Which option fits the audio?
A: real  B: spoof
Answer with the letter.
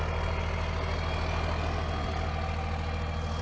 A